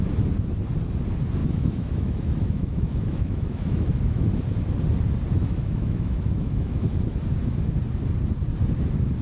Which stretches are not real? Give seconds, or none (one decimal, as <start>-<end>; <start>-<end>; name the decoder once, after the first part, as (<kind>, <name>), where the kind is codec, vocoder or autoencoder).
1.4-4.3 (autoencoder, DAC-VAE); 5.4-7.2